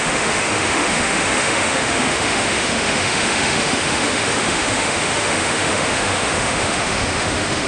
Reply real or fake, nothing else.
fake